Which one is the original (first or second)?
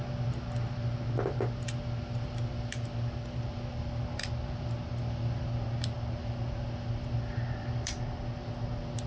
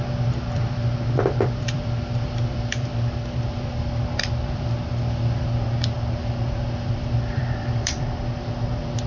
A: first